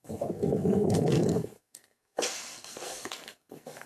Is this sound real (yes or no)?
no